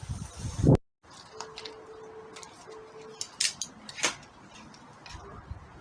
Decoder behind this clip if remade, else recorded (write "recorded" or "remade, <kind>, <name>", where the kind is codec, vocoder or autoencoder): recorded